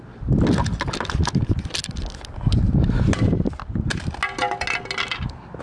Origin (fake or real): real